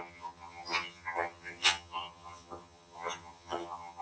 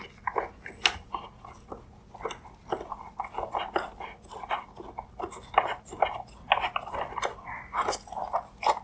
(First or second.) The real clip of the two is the second